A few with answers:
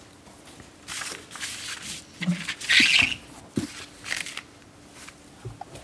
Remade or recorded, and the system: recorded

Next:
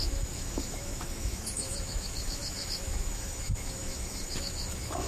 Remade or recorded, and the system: remade, autoencoder, DAC-VAE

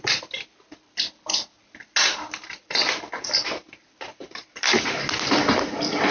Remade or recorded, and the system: recorded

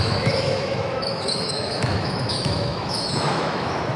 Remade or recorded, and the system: remade, autoencoder, DAC-VAE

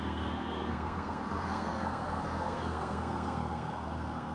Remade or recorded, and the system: remade, codec, SNAC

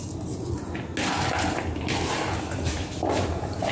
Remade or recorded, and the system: recorded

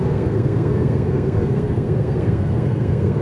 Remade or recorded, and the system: remade, codec, SNAC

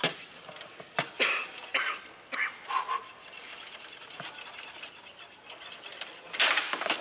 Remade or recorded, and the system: recorded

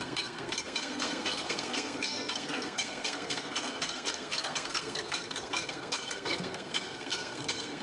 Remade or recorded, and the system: remade, codec, SNAC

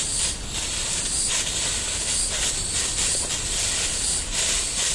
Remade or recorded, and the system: recorded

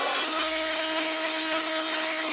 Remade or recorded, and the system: remade, codec, SNAC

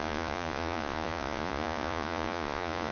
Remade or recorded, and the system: remade, vocoder, Vocos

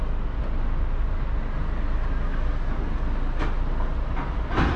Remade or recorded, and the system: recorded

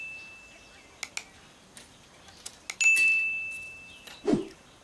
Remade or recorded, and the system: recorded